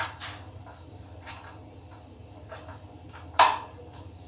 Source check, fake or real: real